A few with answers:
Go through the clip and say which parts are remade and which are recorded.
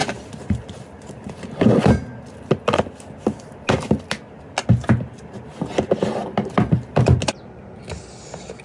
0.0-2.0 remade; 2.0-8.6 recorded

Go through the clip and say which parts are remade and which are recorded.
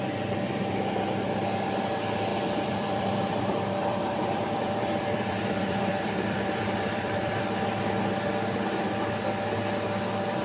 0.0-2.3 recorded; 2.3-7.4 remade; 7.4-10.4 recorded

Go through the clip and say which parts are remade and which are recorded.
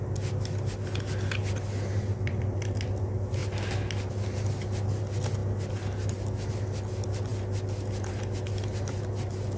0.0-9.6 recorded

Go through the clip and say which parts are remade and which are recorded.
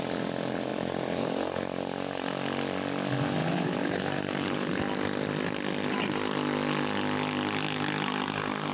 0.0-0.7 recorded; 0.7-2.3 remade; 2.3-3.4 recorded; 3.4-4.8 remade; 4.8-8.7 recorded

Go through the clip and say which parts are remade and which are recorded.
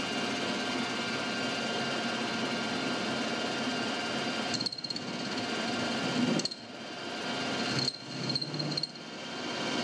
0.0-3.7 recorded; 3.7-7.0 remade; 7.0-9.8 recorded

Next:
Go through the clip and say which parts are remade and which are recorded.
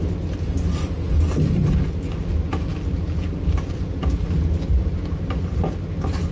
0.0-6.3 recorded